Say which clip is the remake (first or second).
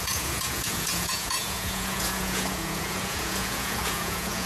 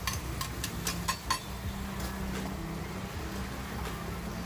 first